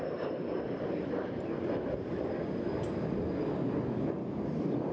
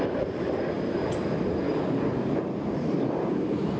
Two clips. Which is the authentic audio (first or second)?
first